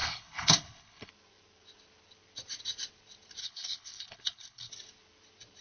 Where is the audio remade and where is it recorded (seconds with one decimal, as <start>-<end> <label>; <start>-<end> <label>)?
0.0-1.1 remade; 1.1-3.4 recorded; 3.4-4.7 remade; 4.7-5.6 recorded